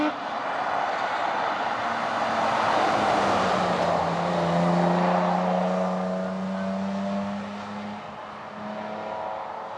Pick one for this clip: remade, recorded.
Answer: recorded